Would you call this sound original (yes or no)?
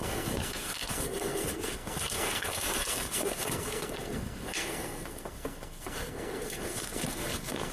no